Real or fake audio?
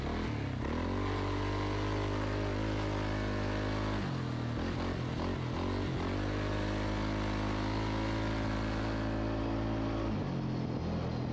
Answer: real